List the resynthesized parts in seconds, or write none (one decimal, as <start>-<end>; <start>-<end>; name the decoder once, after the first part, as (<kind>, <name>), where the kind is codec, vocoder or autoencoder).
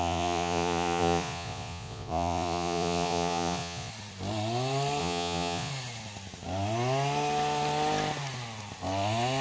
0.0-3.9 (vocoder, Vocos); 5.0-5.7